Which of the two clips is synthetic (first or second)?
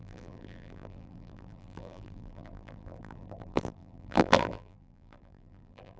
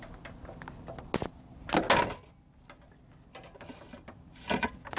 first